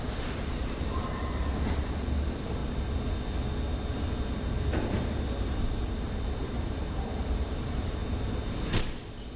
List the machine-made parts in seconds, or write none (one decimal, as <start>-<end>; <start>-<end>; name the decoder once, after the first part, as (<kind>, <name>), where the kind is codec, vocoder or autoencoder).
0.0-2.6 (vocoder, BigVGAN v2); 5.4-8.0